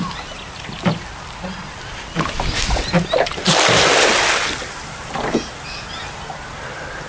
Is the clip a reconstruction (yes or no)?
no